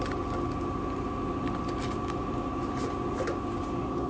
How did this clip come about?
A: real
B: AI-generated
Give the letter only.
A